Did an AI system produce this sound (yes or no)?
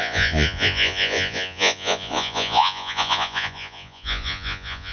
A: yes